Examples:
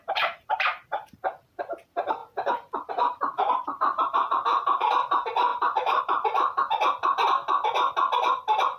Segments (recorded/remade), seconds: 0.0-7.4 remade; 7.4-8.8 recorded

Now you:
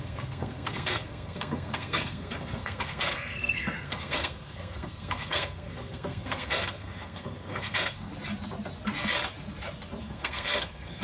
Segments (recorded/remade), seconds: 0.0-8.1 remade; 8.1-10.0 recorded; 10.0-11.0 remade

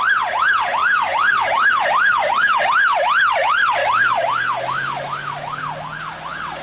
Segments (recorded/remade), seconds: 0.0-0.8 recorded; 0.8-2.6 remade; 2.6-3.8 recorded; 3.8-5.6 remade; 5.6-6.6 recorded

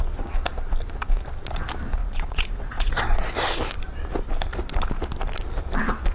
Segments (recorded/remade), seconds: 0.0-2.0 recorded; 2.0-3.3 remade; 3.3-6.1 recorded

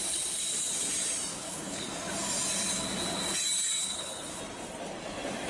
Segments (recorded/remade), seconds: 0.0-1.3 recorded; 1.3-1.9 remade; 1.9-3.8 recorded; 3.8-4.4 remade; 4.4-5.5 recorded